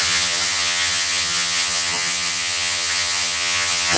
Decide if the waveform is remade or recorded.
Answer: remade